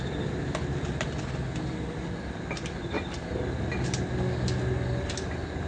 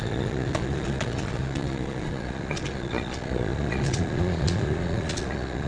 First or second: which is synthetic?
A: second